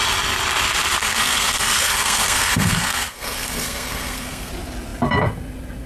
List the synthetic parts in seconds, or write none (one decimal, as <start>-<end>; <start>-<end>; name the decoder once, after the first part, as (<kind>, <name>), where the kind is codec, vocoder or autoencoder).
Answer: 1.0-4.5 (codec, SNAC)